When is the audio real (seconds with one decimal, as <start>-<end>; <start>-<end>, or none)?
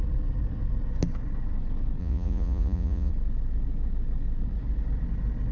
0.0-2.0; 3.1-5.5